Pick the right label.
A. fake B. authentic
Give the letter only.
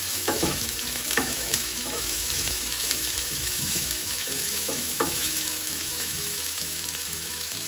A